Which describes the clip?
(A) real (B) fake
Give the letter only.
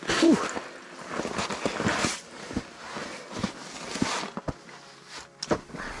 A